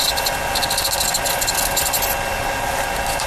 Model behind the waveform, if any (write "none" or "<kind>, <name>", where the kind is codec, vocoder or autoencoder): none